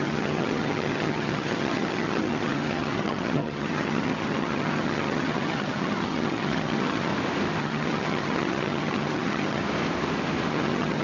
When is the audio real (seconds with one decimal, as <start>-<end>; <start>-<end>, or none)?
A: 7.1-7.6; 9.6-10.5